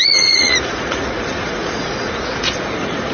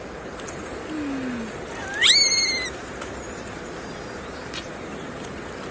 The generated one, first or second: first